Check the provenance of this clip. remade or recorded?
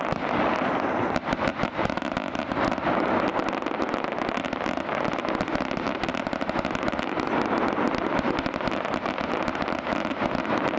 recorded